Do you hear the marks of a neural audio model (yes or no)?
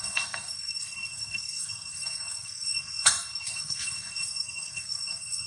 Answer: yes